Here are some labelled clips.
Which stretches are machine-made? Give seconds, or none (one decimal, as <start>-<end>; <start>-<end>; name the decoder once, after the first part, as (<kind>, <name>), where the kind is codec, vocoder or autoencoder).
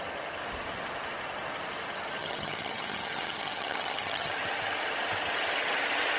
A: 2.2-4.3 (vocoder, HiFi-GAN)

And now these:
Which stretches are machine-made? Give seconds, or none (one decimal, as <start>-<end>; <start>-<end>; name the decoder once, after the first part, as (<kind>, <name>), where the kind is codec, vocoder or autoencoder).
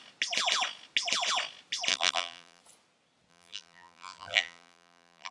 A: 1.9-2.6 (vocoder, BigVGAN v2); 3.3-5.3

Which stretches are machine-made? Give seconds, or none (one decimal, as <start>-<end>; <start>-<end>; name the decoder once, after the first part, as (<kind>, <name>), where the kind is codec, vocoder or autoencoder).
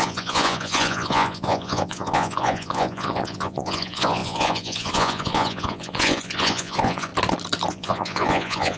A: 0.0-7.1 (vocoder, Vocos); 7.7-8.8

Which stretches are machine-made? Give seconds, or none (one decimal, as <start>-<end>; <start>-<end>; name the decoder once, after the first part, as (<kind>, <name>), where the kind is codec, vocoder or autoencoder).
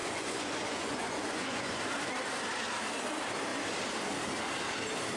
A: 0.0-1.8 (vocoder, Vocos)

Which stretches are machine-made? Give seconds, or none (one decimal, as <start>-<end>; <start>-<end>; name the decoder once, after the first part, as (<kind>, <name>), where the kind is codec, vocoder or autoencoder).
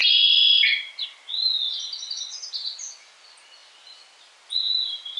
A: none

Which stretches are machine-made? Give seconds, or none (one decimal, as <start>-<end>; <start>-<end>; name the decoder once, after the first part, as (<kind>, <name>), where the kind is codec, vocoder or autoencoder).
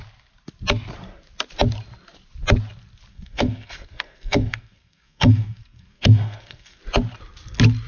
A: 3.1-6.8 (codec, SNAC)